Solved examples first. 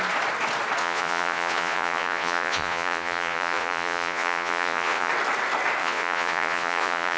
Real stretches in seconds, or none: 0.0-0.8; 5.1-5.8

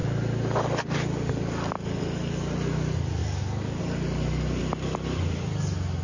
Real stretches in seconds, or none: 0.0-3.2; 3.8-6.0

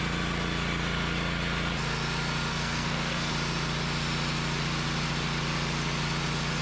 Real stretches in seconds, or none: 0.0-2.5; 3.3-6.6

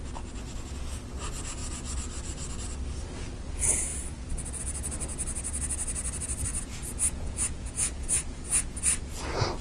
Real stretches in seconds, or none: 0.0-6.5; 8.8-9.6

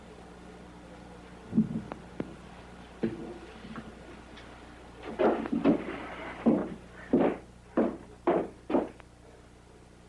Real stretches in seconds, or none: 0.0-10.1

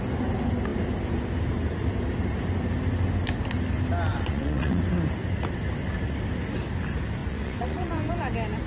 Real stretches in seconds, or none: 0.0-4.1; 4.8-7.2; 8.1-8.7

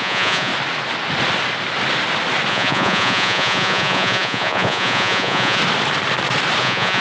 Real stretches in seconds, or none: 0.5-2.5; 5.6-6.6

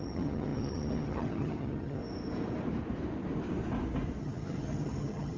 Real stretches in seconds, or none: 2.0-4.2